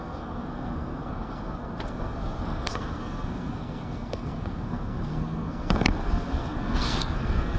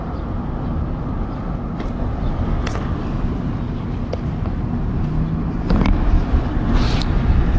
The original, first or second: second